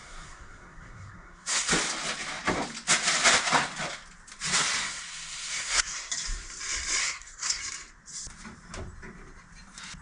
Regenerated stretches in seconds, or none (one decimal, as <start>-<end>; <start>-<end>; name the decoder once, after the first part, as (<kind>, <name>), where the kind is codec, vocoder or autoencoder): 0.0-1.7 (codec, SNAC); 4.8-6.1; 7.0-7.6